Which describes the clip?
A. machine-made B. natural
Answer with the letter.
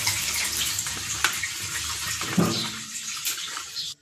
A